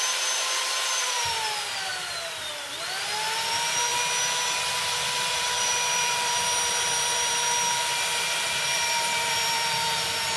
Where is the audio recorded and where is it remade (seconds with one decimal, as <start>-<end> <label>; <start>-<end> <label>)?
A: 0.0-3.9 remade; 3.9-4.7 recorded; 4.7-10.4 remade